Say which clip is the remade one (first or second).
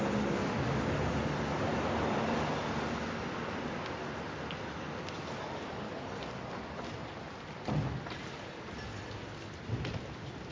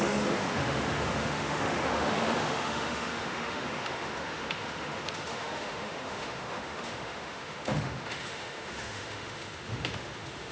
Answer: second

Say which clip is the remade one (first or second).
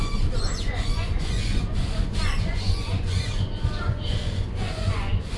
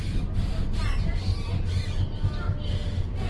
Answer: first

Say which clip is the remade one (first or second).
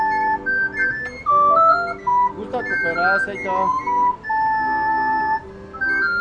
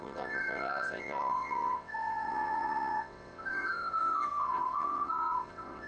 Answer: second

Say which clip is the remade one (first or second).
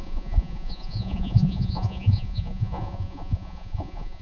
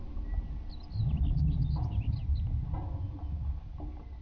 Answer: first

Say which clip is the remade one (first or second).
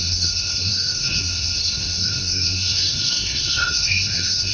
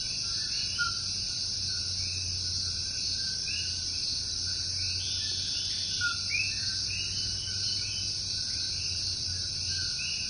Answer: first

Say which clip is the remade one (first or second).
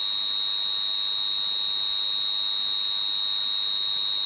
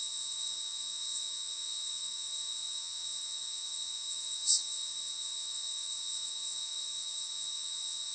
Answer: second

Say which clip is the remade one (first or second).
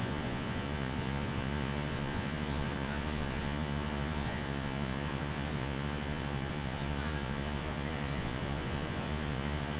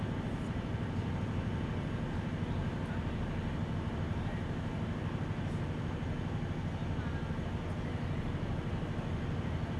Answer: first